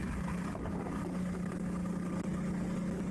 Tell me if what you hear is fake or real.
real